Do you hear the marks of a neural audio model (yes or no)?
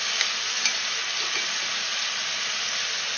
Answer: no